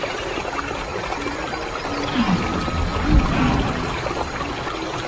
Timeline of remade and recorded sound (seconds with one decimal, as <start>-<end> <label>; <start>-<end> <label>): 0.0-5.1 recorded